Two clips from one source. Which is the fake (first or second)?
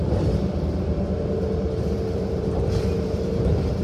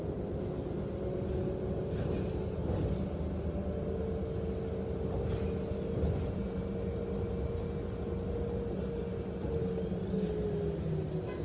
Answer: first